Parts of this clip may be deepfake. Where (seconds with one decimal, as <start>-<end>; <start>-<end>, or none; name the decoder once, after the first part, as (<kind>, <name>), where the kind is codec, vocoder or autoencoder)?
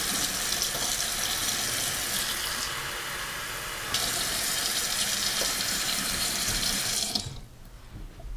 4.3-7.8 (vocoder, BigVGAN v2)